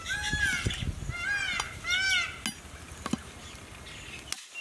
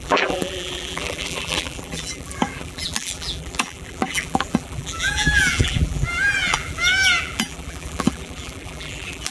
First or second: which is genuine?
first